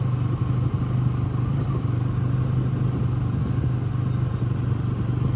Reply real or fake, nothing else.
real